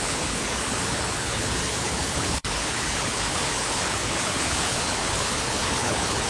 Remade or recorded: remade